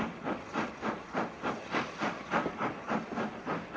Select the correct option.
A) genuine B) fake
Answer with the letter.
B